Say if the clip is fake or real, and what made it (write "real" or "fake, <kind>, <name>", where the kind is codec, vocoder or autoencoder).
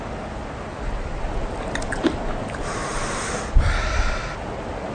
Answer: real